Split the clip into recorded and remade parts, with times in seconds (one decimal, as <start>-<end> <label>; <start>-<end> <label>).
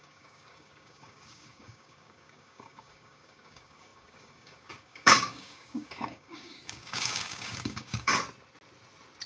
0.0-8.1 remade; 8.1-9.3 recorded